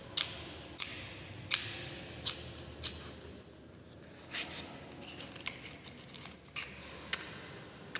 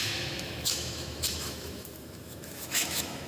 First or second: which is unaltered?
first